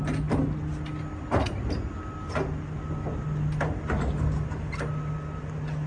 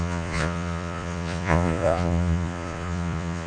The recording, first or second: first